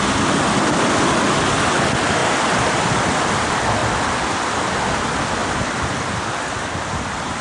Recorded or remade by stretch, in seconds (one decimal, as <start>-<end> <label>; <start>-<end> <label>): 0.0-7.4 recorded